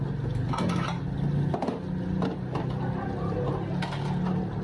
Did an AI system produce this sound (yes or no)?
no